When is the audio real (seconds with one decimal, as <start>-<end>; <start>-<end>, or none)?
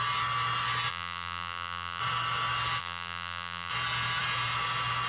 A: 0.0-0.9; 2.0-2.8; 3.7-5.1